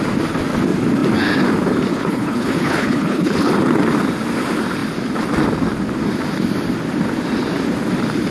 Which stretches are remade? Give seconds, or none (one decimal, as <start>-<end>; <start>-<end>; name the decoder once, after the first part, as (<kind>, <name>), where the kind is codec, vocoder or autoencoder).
1.9-3.5 (codec, HILCodec)